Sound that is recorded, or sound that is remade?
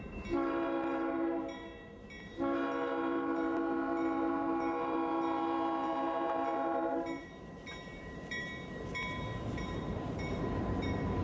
remade